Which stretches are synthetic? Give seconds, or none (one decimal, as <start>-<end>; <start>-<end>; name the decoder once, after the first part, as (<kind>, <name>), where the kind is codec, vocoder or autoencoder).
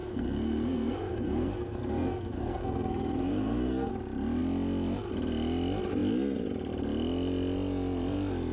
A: 0.0-3.9 (codec, SNAC)